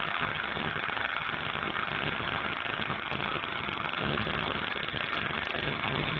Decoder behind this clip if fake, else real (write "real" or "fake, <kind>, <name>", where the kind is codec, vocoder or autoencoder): fake, vocoder, HiFi-GAN